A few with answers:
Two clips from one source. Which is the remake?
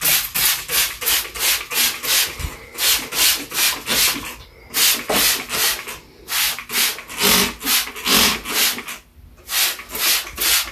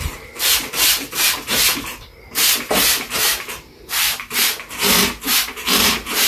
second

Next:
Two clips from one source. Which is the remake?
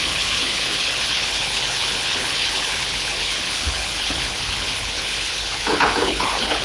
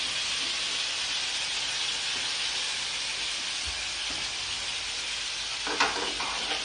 first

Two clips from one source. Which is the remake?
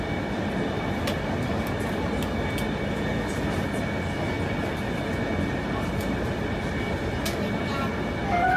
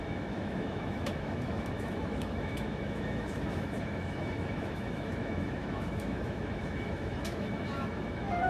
second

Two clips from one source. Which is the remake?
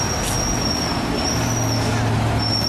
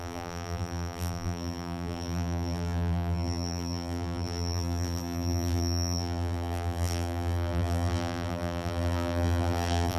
second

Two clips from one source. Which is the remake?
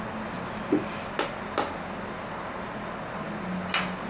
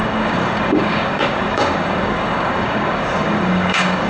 second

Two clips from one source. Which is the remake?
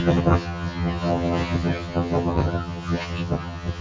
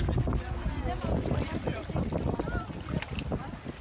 first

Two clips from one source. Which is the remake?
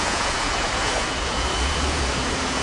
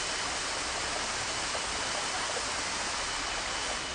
first